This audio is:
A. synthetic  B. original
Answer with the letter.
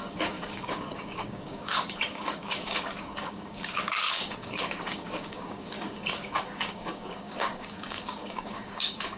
A